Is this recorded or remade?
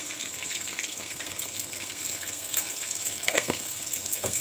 remade